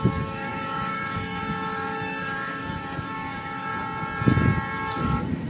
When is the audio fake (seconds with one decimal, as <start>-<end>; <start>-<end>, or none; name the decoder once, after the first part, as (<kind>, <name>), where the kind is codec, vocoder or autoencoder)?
0.0-3.7 (autoencoder, DAC-VAE); 4.9-5.5